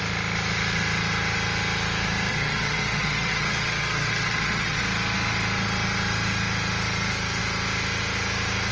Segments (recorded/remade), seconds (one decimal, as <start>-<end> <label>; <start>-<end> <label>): 0.0-2.3 recorded; 2.3-4.8 remade; 4.8-8.7 recorded